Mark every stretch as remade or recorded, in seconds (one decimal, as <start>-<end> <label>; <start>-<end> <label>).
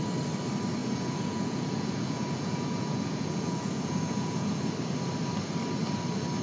0.0-0.8 recorded; 0.8-4.6 remade; 4.6-6.4 recorded